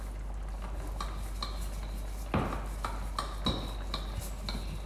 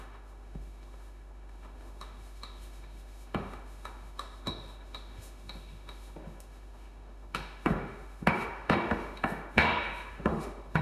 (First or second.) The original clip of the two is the first